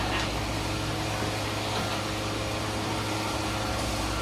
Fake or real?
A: real